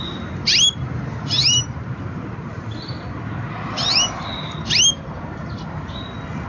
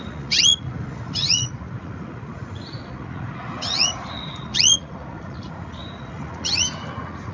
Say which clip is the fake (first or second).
second